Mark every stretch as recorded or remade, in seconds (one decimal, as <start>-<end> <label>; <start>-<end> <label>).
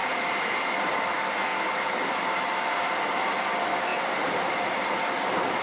0.0-1.5 recorded; 1.5-2.8 remade; 2.8-3.9 recorded; 3.9-4.9 remade; 4.9-5.6 recorded